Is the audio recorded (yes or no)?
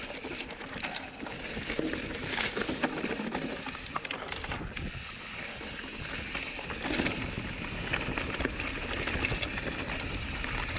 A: yes